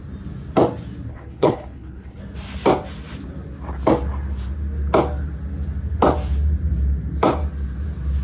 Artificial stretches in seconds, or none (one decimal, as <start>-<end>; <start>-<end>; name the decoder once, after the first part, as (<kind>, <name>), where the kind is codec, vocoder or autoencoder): 1.1-2.2 (codec, HILCodec)